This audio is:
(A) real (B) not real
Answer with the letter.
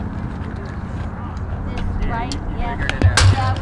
A